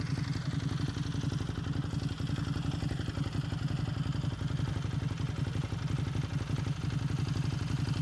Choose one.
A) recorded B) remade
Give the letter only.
A